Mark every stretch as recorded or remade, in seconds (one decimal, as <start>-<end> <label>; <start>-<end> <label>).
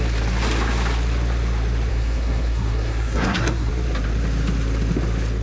0.0-1.9 recorded; 1.9-3.7 remade; 3.7-5.4 recorded